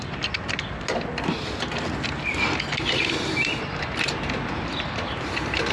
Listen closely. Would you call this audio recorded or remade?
recorded